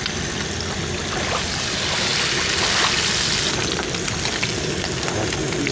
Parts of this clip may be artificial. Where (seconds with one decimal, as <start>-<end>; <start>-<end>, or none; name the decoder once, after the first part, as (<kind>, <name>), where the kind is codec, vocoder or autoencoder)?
none